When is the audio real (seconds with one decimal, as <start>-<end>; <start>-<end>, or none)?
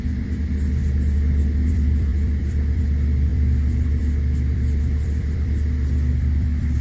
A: 0.8-1.7